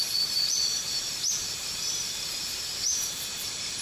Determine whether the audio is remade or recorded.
remade